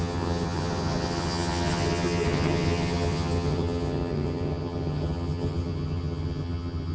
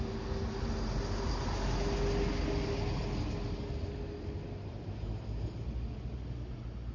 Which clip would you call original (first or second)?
second